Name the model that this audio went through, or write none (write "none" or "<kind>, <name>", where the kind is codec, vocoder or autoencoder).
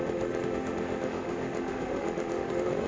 autoencoder, DAC-VAE